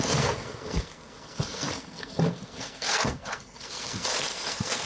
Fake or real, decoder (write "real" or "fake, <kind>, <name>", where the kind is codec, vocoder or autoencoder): fake, codec, SNAC